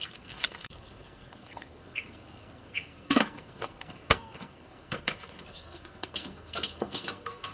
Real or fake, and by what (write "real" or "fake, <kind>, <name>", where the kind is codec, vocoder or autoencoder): fake, codec, SNAC